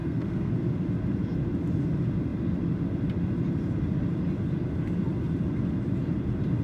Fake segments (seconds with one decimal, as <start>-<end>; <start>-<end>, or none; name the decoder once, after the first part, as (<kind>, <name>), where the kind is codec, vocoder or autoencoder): 0.0-0.5 (codec, SNAC)